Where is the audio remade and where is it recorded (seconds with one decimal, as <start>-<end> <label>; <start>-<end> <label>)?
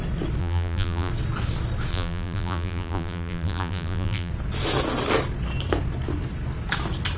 0.0-0.4 recorded; 0.4-1.1 remade; 1.1-1.9 recorded; 1.9-4.3 remade; 4.3-7.2 recorded